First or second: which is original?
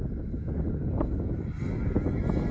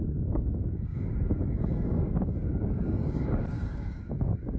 first